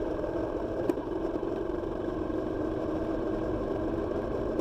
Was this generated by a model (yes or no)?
yes